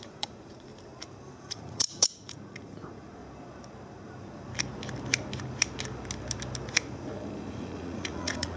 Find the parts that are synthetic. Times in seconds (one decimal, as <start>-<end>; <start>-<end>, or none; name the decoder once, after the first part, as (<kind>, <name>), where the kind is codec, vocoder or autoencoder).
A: 0.0-0.7 (vocoder, Vocos); 1.4-3.2; 7.5-8.6